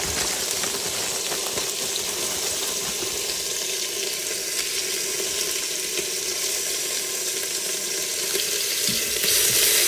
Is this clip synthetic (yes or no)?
no